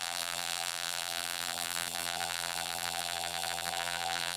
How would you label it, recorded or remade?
remade